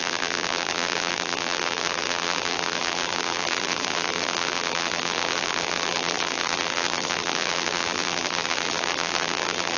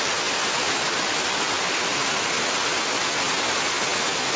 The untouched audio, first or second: second